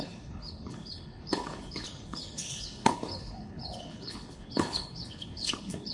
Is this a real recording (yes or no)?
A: no